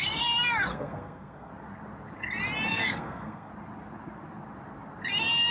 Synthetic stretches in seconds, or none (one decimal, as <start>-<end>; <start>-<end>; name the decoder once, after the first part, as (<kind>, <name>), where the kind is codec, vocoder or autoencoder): 0.7-1.5 (codec, SNAC); 2.7-3.5